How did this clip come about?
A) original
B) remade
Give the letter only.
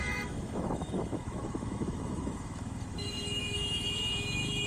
B